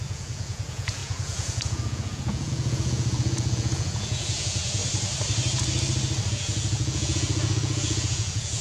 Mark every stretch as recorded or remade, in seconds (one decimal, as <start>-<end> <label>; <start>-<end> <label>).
0.0-4.8 remade; 4.8-6.3 recorded; 6.3-8.6 remade